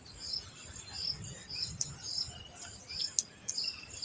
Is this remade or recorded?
recorded